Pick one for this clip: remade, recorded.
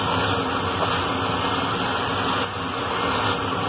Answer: recorded